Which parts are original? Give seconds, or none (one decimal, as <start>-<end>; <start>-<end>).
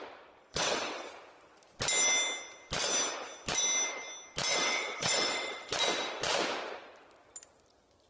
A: 0.0-0.4; 1.1-4.5; 5.7-8.1